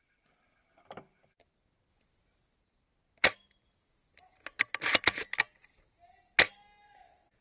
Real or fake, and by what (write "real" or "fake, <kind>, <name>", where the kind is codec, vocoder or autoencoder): real